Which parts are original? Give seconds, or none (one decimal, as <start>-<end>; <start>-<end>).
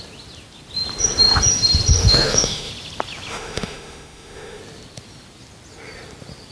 0.0-2.0; 2.7-3.3; 4.6-6.5